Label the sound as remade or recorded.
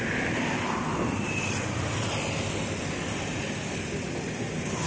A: recorded